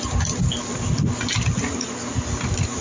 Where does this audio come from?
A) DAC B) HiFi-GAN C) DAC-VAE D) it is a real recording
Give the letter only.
D